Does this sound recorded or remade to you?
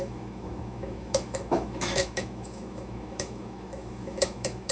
remade